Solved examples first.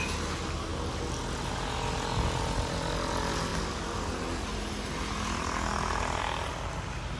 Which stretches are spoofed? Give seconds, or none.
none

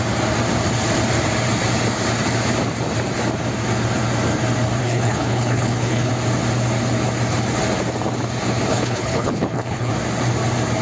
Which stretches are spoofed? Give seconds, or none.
4.8-6.1; 8.7-9.9

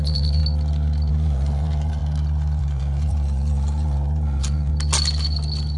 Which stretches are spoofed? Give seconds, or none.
0.0-0.4; 1.1-2.0; 2.6-4.7

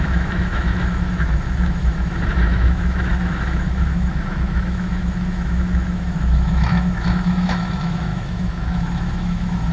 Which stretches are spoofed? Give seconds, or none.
0.0-9.7

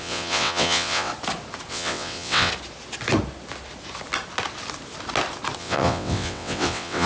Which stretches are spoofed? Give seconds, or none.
0.0-1.1; 1.7-2.5; 5.6-7.1